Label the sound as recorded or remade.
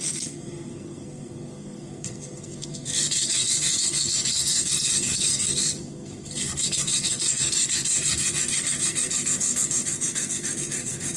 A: remade